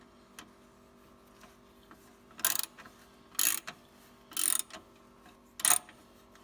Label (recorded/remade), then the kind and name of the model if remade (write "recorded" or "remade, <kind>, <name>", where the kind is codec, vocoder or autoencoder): recorded